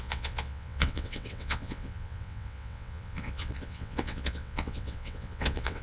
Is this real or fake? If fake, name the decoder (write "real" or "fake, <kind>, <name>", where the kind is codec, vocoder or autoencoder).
fake, vocoder, WaveNeXt